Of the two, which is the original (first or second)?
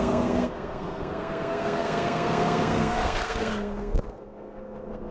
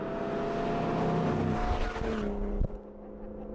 second